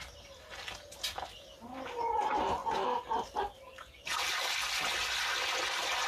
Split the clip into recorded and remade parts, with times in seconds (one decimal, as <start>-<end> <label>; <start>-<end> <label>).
0.0-6.1 recorded